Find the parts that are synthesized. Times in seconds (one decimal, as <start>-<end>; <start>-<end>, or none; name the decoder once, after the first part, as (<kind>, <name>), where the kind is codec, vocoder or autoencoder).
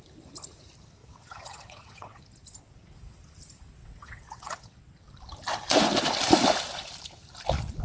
1.0-2.2 (vocoder, WaveNeXt); 3.8-4.8